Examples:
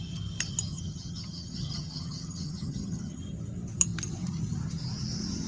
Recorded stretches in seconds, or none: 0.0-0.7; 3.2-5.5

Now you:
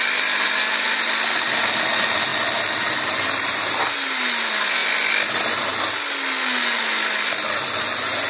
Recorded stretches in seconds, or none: 0.0-8.3

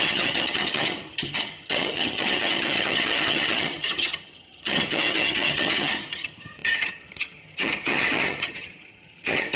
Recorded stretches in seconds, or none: none

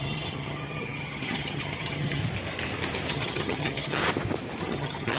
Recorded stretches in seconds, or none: 2.2-3.1; 4.0-4.6

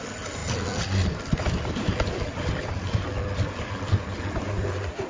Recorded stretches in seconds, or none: 0.0-5.1

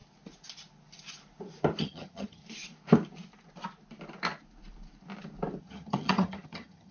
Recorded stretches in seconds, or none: 0.0-1.8; 2.4-5.6